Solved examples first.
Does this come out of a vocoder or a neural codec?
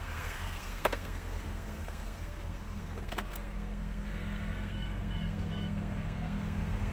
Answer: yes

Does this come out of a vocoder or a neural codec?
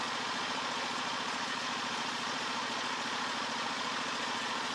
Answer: yes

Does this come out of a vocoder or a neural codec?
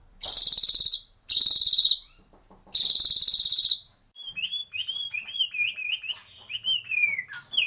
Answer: yes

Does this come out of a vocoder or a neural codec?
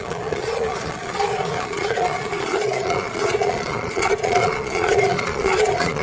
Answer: yes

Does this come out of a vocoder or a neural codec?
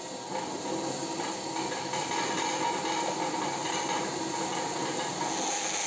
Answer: no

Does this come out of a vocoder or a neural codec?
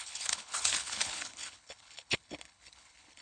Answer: yes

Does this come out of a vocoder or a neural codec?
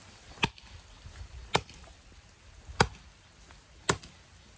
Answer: no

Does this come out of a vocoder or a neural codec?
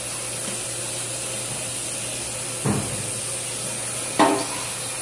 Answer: no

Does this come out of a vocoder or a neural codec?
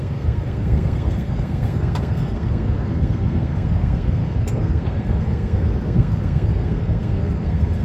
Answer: yes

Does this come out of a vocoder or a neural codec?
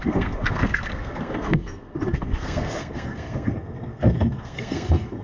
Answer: yes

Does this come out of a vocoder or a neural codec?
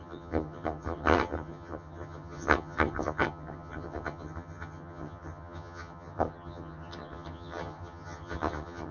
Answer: yes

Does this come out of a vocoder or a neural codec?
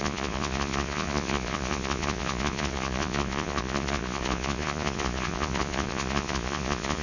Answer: yes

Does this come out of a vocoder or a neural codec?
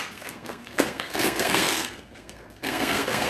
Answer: yes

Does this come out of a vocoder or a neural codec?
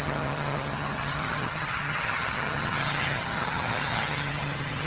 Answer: yes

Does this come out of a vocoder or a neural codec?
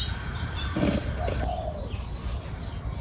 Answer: no